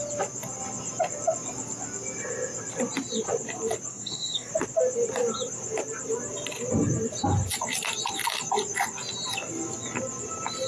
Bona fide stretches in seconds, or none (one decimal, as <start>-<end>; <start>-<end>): 0.0-3.9; 4.5-10.7